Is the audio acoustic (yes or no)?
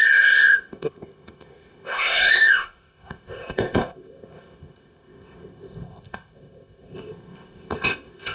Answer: no